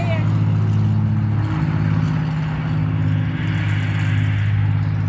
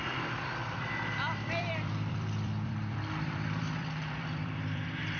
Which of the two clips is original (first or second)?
first